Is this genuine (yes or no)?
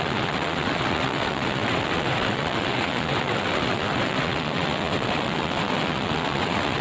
no